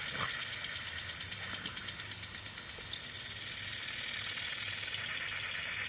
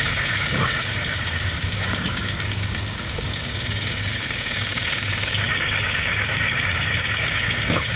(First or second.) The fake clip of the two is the second